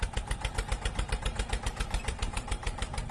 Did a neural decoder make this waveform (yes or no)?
yes